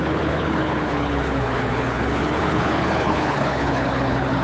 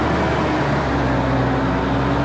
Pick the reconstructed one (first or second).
first